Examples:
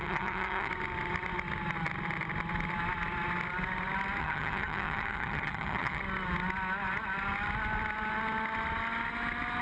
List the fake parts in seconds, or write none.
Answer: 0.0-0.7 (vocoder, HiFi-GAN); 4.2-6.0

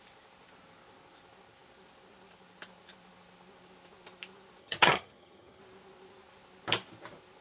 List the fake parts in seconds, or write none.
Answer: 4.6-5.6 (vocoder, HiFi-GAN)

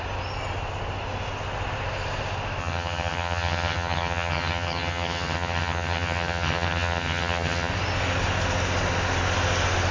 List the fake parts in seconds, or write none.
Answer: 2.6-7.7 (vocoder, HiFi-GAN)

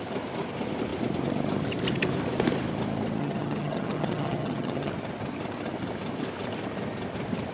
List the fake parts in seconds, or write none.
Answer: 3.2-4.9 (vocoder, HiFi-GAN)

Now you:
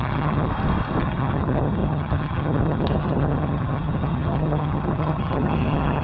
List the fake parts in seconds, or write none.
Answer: 0.0-0.5 (vocoder, HiFi-GAN); 1.0-6.0

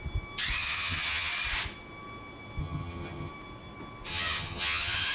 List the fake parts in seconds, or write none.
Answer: 0.6-1.3 (vocoder, HiFi-GAN); 2.6-3.3; 4.1-5.1

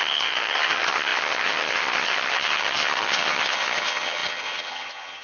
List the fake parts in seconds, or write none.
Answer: 0.0-5.2 (vocoder, HiFi-GAN)